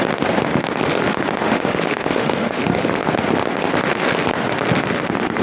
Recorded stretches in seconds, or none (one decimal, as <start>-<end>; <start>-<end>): 0.0-1.4; 2.6-5.4